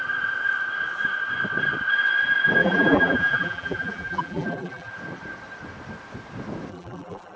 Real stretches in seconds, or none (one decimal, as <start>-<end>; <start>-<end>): 0.0-2.6; 4.9-6.7